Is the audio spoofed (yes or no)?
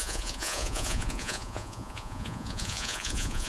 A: yes